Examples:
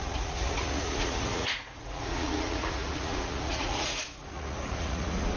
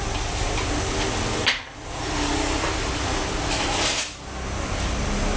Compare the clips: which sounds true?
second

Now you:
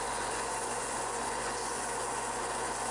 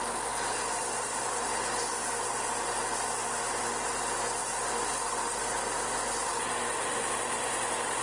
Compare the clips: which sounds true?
second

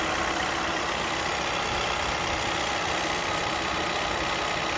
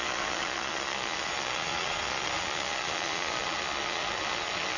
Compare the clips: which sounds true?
first